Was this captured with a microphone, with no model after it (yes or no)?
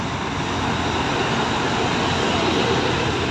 yes